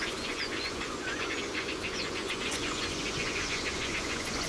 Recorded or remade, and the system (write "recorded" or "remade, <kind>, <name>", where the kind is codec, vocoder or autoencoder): remade, vocoder, Vocos